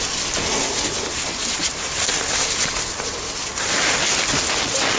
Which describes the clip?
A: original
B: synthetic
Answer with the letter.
A